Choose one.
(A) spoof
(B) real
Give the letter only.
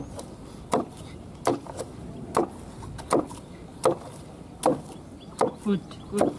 B